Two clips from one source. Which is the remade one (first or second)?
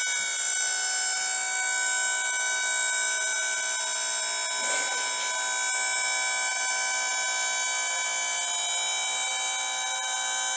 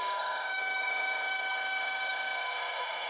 second